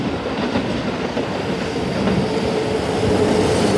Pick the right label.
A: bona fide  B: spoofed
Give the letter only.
A